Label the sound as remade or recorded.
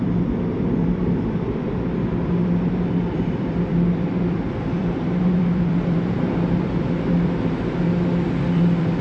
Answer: remade